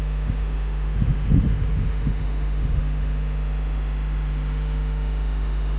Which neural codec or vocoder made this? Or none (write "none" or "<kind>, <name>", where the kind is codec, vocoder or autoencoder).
autoencoder, DAC-VAE